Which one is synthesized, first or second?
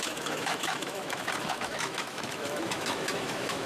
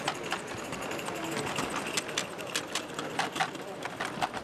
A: first